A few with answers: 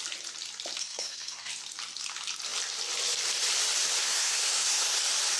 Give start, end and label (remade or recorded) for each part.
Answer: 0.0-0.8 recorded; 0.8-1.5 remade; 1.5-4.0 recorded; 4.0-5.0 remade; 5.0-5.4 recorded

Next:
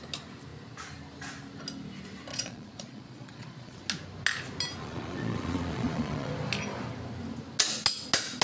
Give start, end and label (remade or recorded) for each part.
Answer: 0.0-2.3 recorded; 2.3-3.8 remade; 3.8-4.8 recorded; 4.8-6.3 remade; 6.3-8.4 recorded

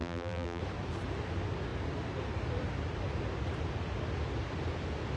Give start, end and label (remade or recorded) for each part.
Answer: 0.0-0.6 remade; 0.6-5.2 recorded

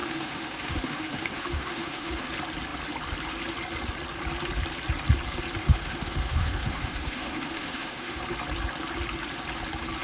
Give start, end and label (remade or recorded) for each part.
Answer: 0.0-2.3 remade; 2.3-5.6 recorded; 5.6-8.2 remade; 8.2-10.0 recorded